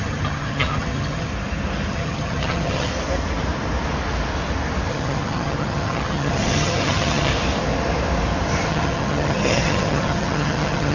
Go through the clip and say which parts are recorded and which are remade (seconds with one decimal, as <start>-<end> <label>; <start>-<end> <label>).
0.0-1.3 remade; 1.3-1.9 recorded; 1.9-2.9 remade; 2.9-4.9 recorded; 4.9-7.3 remade; 7.3-8.7 recorded; 8.7-10.9 remade